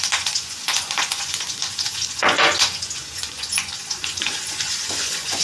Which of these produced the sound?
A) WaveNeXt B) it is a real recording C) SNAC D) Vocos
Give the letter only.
D